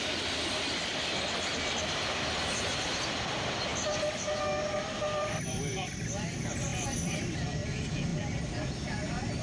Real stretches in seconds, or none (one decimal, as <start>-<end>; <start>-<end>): 0.0-6.7; 7.2-9.4